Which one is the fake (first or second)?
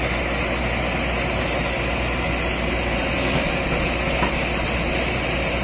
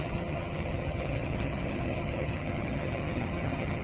second